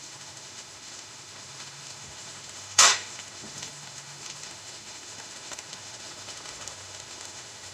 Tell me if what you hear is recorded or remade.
remade